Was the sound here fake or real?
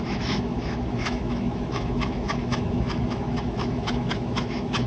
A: fake